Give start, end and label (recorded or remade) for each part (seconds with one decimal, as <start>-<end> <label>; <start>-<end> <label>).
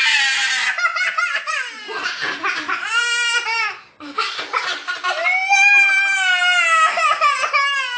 0.0-8.0 recorded